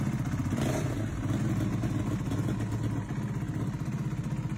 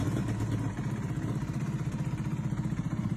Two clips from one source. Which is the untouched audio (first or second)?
first